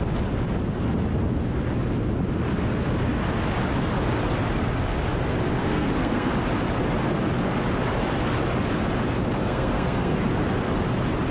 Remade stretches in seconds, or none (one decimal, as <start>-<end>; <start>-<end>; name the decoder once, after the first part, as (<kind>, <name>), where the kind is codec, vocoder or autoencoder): 5.6-6.3 (codec, SNAC); 9.4-10.2